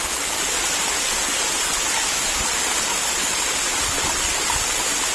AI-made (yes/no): no